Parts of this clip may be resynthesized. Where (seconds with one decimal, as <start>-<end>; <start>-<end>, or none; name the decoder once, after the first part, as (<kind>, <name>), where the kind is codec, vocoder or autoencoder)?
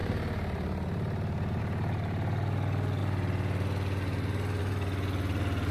0.0-1.6 (vocoder, BigVGAN v2)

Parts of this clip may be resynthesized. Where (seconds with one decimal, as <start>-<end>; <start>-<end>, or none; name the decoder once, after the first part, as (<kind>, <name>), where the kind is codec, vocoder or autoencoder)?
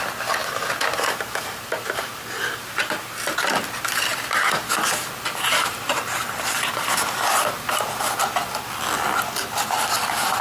0.4-2.1 (vocoder, BigVGAN v2); 5.5-7.5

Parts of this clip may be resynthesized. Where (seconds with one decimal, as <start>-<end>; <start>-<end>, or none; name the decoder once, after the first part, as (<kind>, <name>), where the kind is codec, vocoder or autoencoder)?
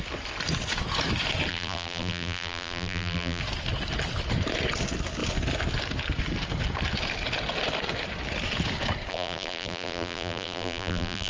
1.5-3.4 (vocoder, BigVGAN v2); 9.1-11.3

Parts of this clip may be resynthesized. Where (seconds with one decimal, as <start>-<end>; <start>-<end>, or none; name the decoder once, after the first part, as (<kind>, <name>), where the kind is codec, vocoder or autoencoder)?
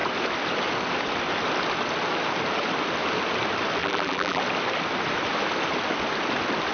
3.8-4.4 (vocoder, BigVGAN v2)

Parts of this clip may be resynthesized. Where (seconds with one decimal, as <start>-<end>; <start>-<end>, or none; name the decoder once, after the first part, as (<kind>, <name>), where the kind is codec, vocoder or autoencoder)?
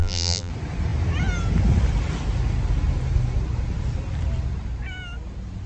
0.0-0.5 (vocoder, BigVGAN v2)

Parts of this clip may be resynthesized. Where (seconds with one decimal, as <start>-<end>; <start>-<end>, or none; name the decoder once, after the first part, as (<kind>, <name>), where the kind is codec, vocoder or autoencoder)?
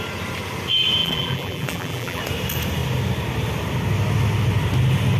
1.0-2.2 (vocoder, BigVGAN v2)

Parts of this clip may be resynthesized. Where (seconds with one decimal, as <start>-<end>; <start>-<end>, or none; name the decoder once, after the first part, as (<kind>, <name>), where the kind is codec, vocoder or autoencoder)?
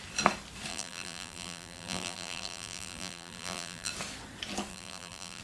0.7-3.9 (vocoder, BigVGAN v2); 4.7-5.4